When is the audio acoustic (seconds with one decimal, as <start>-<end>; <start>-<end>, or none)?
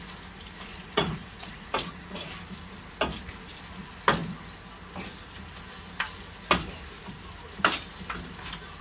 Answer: 0.0-0.7; 2.3-8.8